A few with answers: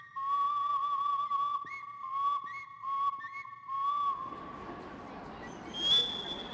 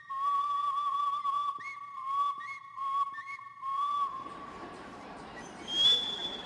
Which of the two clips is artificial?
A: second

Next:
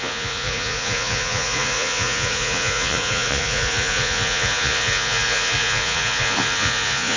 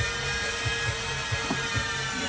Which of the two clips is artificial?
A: first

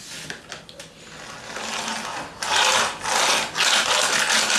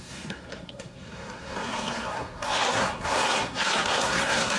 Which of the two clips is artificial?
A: second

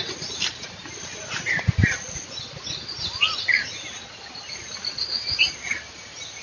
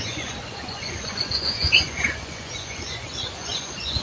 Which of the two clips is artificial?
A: second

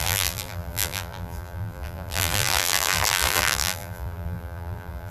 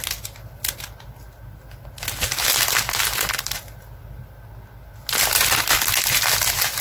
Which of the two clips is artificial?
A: first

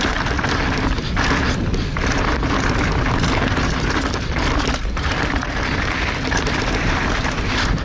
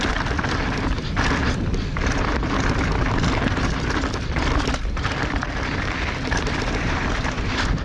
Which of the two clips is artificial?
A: second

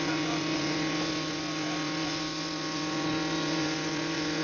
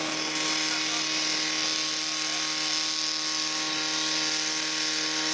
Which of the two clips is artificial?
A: first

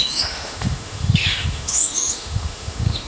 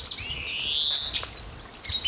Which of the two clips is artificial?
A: first